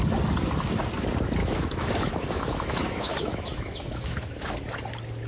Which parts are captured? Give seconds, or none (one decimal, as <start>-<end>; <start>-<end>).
0.0-1.4; 4.6-5.3